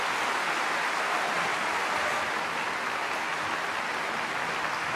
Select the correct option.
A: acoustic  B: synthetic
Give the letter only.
A